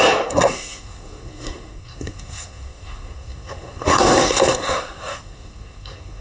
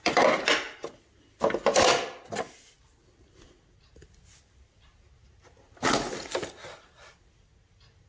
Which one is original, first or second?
second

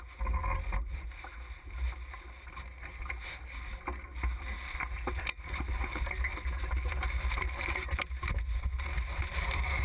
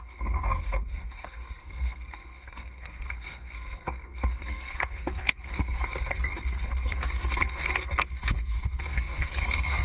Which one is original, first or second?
first